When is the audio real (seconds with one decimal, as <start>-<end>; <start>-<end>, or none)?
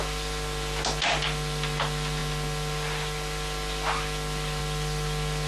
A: 0.0-5.5